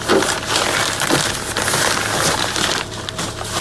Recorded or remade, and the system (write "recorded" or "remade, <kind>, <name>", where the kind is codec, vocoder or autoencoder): recorded